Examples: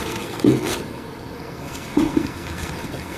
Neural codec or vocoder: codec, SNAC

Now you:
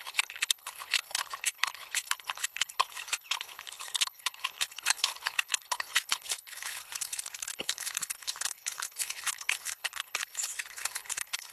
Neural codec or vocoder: codec, HILCodec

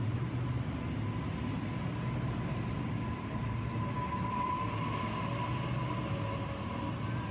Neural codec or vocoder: none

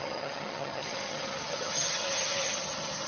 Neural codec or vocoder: vocoder, HiFi-GAN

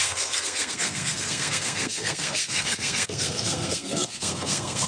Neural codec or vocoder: codec, SNAC